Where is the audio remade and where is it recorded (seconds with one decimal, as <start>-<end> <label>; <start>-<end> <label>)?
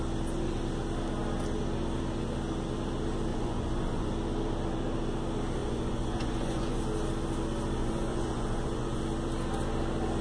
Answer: 0.0-3.3 recorded; 3.3-4.1 remade; 4.1-5.6 recorded; 5.6-6.8 remade; 6.8-7.8 recorded; 7.8-9.0 remade; 9.0-10.2 recorded